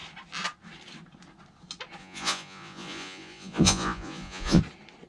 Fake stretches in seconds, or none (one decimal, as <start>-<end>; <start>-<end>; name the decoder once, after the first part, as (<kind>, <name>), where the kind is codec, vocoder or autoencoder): 2.0-4.6 (vocoder, Vocos)